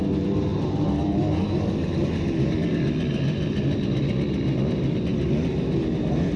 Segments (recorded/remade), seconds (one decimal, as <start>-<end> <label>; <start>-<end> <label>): 0.0-6.4 recorded